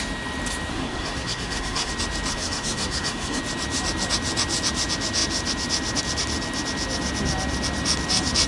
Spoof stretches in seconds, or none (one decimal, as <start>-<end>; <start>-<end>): 0.7-1.9; 2.3-3.4